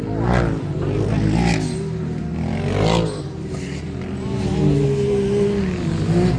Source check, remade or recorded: recorded